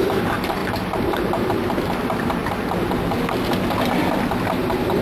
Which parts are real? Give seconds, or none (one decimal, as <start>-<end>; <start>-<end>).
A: 2.4-4.4